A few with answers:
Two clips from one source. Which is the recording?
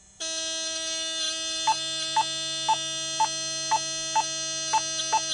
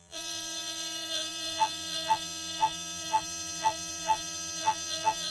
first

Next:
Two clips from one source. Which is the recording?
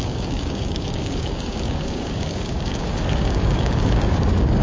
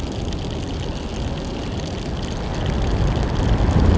second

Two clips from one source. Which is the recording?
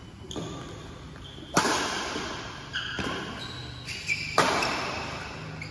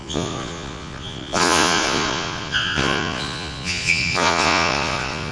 first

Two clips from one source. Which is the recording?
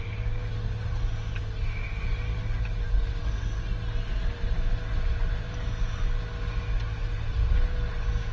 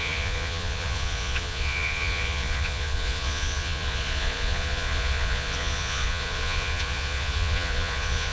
first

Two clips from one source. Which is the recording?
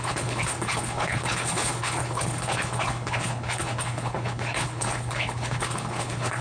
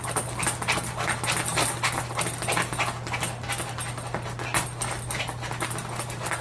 second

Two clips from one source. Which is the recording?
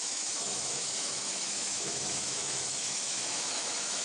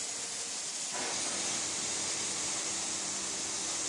second